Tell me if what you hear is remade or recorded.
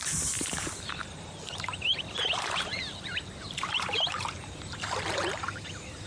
remade